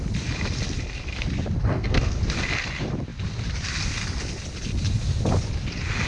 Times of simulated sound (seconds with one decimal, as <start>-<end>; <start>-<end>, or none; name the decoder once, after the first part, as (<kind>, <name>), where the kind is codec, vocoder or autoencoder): 1.7-2.2 (codec, SNAC)